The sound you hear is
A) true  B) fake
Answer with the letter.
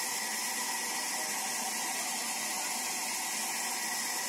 A